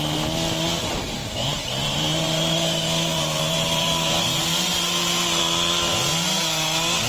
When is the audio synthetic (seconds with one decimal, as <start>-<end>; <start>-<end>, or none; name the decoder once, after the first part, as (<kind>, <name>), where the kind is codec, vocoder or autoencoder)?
1.2-5.4 (vocoder, BigVGAN v2)